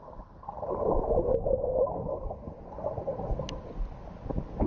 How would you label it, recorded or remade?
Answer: recorded